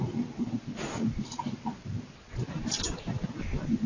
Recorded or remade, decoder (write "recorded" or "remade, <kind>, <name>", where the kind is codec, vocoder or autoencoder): recorded